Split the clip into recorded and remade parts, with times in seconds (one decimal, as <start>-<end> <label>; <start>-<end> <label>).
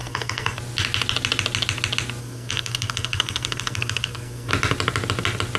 0.0-0.6 remade; 0.6-2.2 recorded; 2.2-4.5 remade; 4.5-5.6 recorded